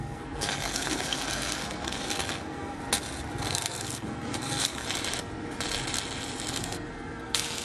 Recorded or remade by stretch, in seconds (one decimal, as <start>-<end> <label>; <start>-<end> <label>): 0.0-2.8 remade; 2.8-3.4 recorded; 3.4-4.8 remade; 4.8-6.5 recorded; 6.5-7.6 remade

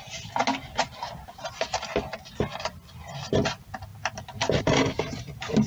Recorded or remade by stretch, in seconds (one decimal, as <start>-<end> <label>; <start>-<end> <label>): 0.0-5.7 recorded

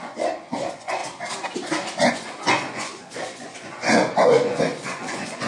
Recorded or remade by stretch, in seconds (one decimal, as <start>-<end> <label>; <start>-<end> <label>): 0.0-1.0 remade; 1.0-2.1 recorded; 2.1-5.5 remade

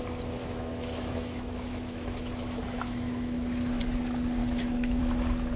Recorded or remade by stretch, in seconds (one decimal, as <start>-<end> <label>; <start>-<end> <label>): 0.0-0.4 recorded; 0.4-3.8 remade; 3.8-4.4 recorded; 4.4-5.0 remade; 5.0-5.6 recorded

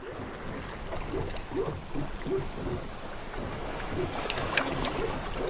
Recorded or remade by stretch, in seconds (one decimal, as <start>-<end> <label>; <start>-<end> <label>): 0.0-3.5 recorded; 3.5-5.0 remade; 5.0-5.5 recorded

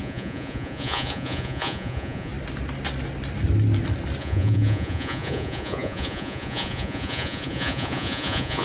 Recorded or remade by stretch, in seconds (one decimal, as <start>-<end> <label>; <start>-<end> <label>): 0.0-2.3 remade; 2.3-4.2 recorded; 4.2-8.6 remade